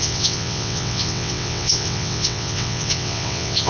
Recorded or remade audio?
remade